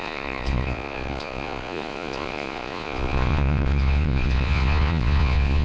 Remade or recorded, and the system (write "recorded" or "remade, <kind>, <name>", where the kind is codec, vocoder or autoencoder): remade, vocoder, Vocos